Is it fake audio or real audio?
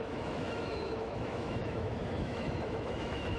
fake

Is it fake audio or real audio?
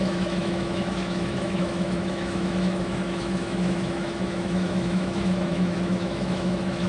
fake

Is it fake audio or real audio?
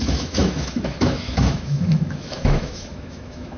fake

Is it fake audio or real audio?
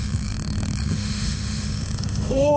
fake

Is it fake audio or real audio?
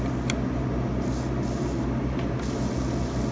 real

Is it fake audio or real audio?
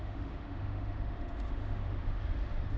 fake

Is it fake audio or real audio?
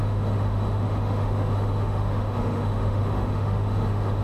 fake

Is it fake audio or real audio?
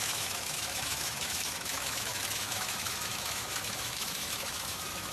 fake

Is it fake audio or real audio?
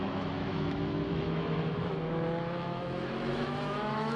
fake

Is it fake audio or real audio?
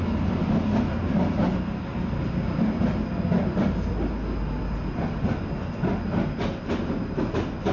real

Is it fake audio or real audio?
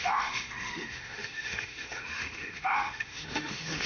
fake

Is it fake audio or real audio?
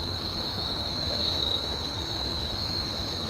fake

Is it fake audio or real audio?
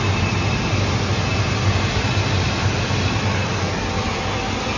real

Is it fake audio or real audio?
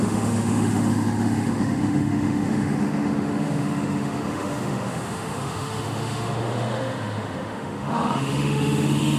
fake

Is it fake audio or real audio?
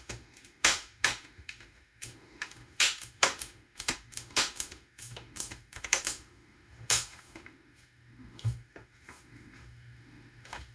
fake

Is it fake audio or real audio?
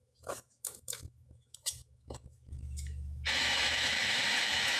fake